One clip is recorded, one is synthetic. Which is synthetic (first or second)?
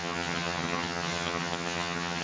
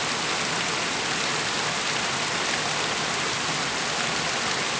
first